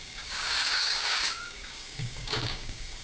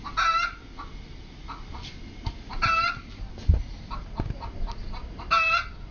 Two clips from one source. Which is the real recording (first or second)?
second